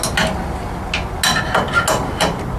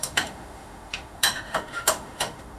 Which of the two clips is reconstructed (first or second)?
second